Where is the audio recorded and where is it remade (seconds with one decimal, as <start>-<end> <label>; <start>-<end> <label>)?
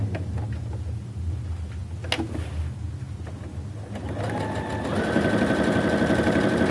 0.0-6.7 recorded